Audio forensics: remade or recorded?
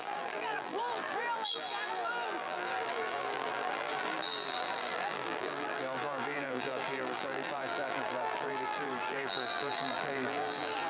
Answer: remade